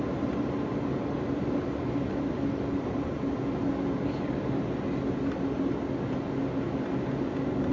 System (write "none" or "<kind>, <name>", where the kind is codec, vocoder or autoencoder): none